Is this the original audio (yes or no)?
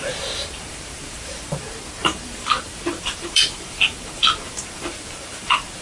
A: no